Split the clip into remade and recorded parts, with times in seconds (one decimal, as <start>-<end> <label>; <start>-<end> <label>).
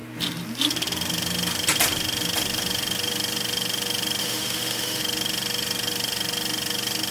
0.0-4.2 recorded; 4.2-5.0 remade; 5.0-7.1 recorded